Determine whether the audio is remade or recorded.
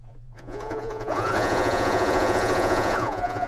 remade